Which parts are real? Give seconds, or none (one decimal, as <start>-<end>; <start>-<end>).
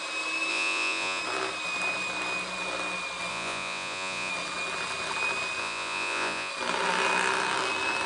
0.0-0.5; 1.2-3.3; 4.3-5.6; 6.5-8.1